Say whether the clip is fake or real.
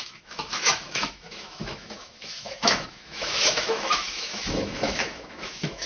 fake